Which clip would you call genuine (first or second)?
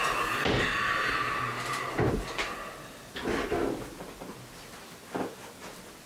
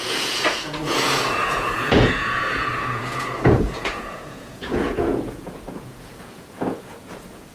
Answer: first